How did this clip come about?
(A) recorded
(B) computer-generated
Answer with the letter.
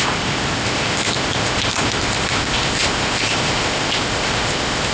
B